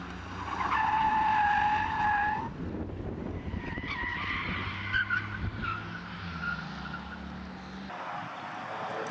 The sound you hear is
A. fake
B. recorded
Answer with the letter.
B